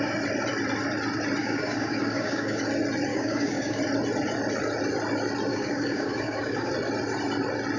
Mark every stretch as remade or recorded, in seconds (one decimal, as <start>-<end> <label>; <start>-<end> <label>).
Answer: 0.0-1.4 recorded; 1.4-2.6 remade; 2.6-3.1 recorded; 3.1-3.8 remade; 3.8-5.5 recorded; 5.5-6.7 remade; 6.7-7.8 recorded